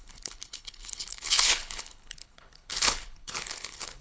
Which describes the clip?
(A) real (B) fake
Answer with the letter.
B